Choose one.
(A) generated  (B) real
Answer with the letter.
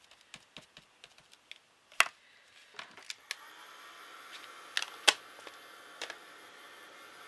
B